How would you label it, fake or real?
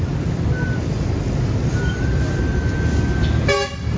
real